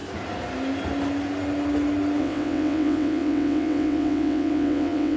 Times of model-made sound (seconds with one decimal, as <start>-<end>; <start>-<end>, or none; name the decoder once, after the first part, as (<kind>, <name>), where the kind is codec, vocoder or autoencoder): 2.2-5.2 (vocoder, WaveNeXt)

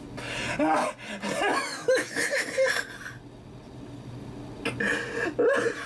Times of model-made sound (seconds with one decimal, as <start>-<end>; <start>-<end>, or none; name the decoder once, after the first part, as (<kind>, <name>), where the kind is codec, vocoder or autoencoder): 1.5-2.5 (autoencoder, DAC-VAE)

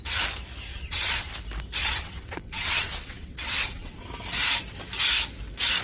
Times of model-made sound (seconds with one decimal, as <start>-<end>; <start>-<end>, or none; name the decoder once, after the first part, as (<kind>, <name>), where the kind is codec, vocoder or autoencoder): 0.7-1.3 (vocoder, WaveNeXt); 1.8-4.0

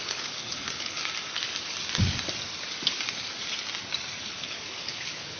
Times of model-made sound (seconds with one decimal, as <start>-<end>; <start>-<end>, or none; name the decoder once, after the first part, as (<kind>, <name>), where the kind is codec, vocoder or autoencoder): 0.0-1.0 (codec, HILCodec); 4.2-5.4